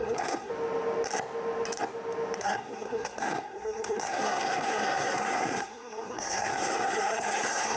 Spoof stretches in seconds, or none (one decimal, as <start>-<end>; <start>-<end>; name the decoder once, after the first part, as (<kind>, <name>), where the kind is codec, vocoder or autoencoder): 0.0-0.5 (codec, SNAC); 2.4-7.8